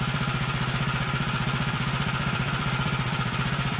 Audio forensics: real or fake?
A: fake